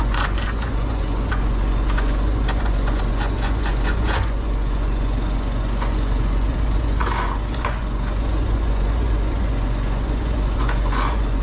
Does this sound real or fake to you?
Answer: fake